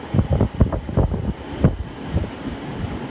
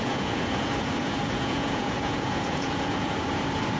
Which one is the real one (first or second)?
first